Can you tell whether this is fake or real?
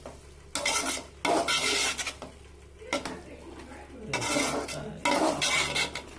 real